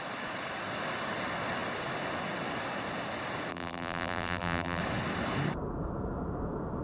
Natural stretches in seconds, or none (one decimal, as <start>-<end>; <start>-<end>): 0.0-3.5; 4.8-6.8